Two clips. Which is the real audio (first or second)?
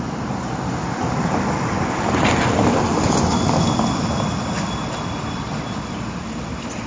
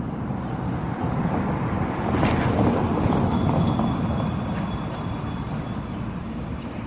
first